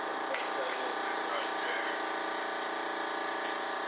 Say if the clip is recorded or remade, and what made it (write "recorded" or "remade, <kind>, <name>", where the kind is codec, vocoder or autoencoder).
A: remade, vocoder, BigVGAN v2